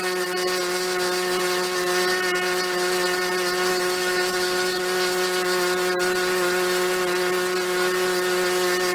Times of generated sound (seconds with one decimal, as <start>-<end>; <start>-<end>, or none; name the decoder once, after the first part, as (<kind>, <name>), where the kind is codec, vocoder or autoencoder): 3.7-4.8 (autoencoder, DAC-VAE)